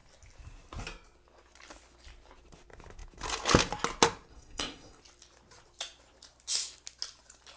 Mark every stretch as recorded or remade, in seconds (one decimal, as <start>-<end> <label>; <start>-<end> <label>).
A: 0.0-4.3 recorded; 4.3-5.0 remade; 5.0-7.6 recorded